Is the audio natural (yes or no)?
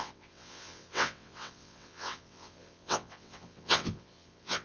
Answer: no